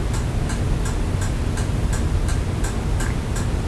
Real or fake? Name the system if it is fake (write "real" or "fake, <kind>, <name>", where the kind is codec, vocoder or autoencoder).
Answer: real